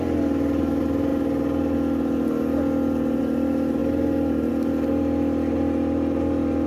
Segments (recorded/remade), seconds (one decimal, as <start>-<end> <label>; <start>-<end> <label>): 0.0-6.7 recorded

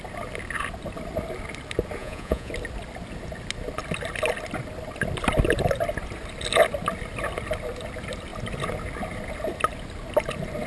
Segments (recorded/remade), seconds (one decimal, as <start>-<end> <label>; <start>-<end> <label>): 0.0-2.0 recorded; 2.0-2.5 remade; 2.5-10.7 recorded

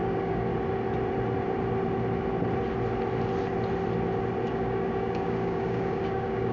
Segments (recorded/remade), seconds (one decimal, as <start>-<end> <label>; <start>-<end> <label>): 0.0-0.5 remade; 0.5-4.4 recorded; 4.4-6.5 remade

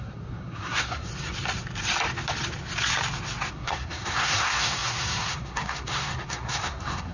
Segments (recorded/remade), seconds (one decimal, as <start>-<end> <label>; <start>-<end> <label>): 0.0-1.1 remade; 1.1-3.5 recorded; 3.5-7.1 remade